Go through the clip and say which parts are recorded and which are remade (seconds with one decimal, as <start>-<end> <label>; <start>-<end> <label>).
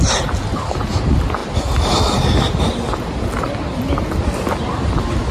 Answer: 0.0-5.3 recorded